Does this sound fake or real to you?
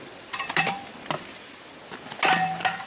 real